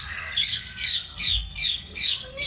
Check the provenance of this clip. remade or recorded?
remade